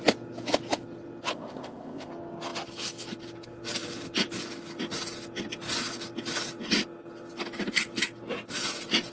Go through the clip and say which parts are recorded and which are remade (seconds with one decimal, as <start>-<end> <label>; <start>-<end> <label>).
0.0-1.3 recorded; 1.3-2.1 remade; 2.1-9.1 recorded